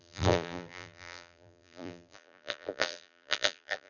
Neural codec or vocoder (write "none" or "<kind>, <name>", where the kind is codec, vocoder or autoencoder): vocoder, BigVGAN v2